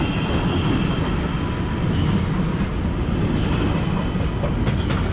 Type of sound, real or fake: real